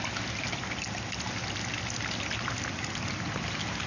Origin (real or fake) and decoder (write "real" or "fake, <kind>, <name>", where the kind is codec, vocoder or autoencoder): real